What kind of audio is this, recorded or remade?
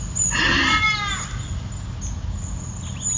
recorded